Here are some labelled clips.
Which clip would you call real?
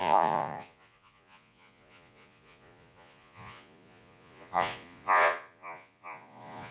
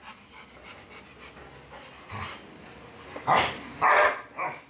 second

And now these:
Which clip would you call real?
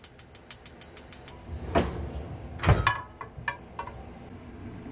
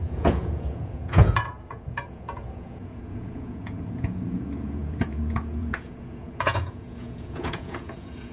first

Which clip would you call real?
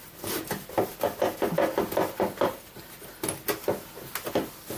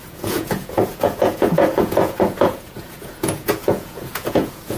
first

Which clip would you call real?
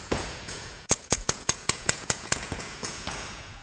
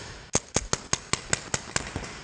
second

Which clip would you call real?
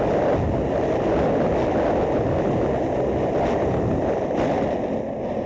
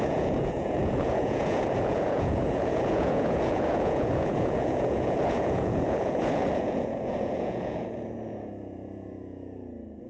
first